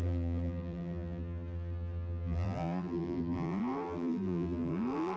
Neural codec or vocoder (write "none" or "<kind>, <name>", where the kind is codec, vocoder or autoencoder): vocoder, BigVGAN v2